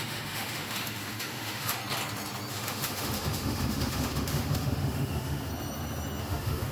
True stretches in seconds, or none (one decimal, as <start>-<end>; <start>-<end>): 1.8-2.5; 5.5-6.2